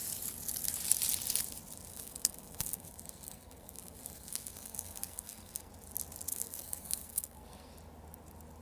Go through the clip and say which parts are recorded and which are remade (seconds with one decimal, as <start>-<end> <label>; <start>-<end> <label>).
0.0-1.9 recorded; 1.9-5.7 remade; 5.7-6.3 recorded; 6.3-7.7 remade; 7.7-8.6 recorded